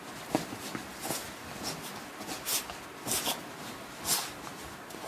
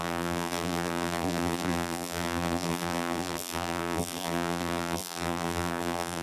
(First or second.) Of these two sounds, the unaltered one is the first